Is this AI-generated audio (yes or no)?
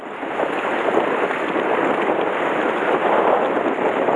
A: no